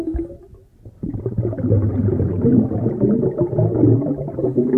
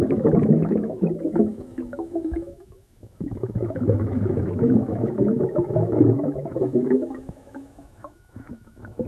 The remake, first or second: second